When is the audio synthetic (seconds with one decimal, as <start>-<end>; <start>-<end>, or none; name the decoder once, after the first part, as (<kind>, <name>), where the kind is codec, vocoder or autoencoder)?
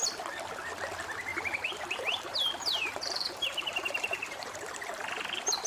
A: 1.3-4.7 (vocoder, BigVGAN v2)